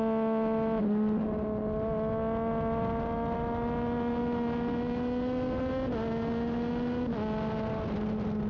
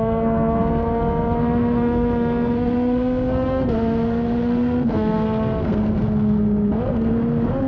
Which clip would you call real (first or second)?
first